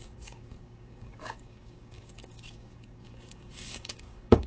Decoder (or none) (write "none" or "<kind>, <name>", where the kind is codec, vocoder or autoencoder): codec, DAC